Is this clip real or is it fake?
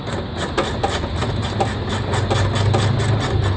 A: real